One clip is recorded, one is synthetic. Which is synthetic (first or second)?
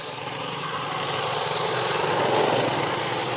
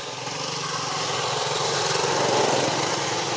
first